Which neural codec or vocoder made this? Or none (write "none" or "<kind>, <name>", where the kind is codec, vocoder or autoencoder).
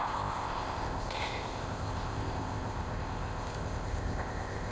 codec, ZipCodec